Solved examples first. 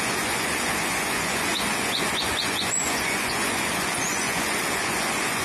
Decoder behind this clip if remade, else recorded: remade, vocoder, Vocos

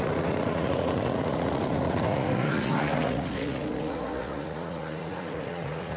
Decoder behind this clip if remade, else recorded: remade, vocoder, Vocos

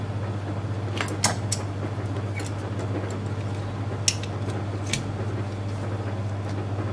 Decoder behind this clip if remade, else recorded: recorded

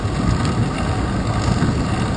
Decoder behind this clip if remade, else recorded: recorded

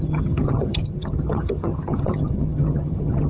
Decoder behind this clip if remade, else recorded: remade, vocoder, HiFi-GAN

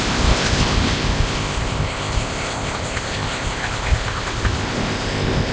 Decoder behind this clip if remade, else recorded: remade, codec, ZipCodec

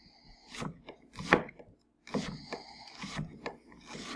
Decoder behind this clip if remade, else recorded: recorded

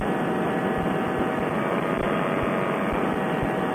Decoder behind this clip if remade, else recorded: recorded